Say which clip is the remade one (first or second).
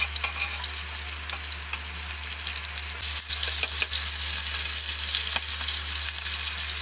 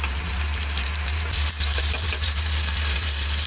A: second